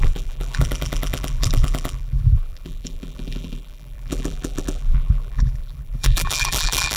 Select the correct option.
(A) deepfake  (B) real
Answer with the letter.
A